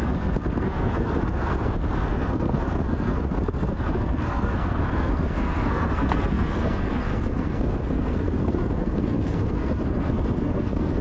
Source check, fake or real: fake